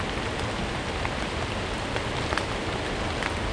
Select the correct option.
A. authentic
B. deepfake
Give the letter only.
A